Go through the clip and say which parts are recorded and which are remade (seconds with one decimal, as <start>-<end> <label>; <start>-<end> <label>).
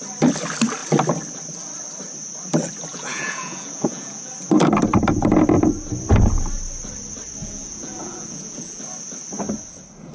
0.0-2.9 recorded; 2.9-4.3 remade; 4.3-7.4 recorded; 7.4-8.8 remade; 8.8-10.1 recorded